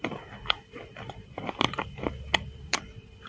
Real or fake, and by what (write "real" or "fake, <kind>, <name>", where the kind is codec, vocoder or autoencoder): fake, vocoder, BigVGAN v2